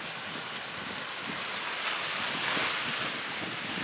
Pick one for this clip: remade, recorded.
recorded